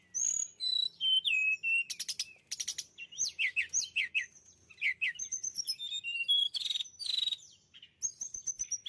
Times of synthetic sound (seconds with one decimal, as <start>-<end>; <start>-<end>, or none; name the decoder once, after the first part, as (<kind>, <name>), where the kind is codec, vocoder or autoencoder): none